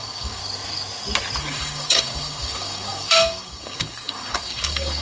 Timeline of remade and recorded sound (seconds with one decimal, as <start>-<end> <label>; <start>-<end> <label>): 0.0-0.4 remade; 0.4-1.4 recorded; 1.4-5.0 remade

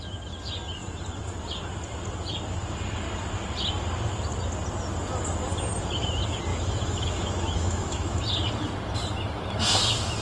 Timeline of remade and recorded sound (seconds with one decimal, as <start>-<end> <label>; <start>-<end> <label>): 0.0-6.5 recorded; 6.5-8.2 remade; 8.2-10.2 recorded

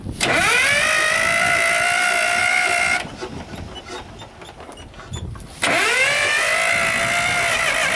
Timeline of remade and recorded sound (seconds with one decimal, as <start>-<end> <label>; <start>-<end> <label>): 0.0-8.0 recorded

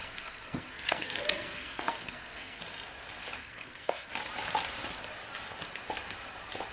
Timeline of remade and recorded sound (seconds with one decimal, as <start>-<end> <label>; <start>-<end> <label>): 0.0-2.6 remade; 2.6-3.4 recorded; 3.4-4.1 remade; 4.1-6.7 recorded

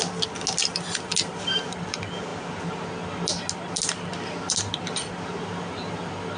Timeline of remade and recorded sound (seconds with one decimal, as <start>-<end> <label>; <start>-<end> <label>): 0.0-6.4 recorded

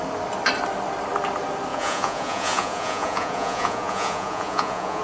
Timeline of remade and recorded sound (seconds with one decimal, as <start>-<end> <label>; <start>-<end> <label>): 0.0-1.7 recorded; 1.7-5.0 remade